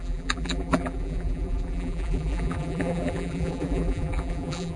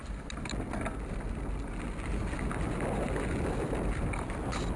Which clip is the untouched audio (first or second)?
second